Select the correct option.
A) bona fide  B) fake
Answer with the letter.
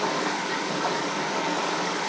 B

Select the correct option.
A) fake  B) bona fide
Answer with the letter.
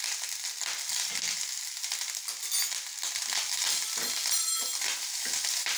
B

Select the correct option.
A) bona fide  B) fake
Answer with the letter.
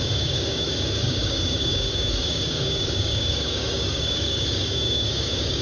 B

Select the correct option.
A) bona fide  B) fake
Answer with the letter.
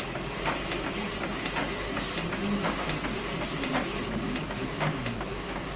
A